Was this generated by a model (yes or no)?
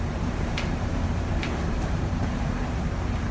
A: yes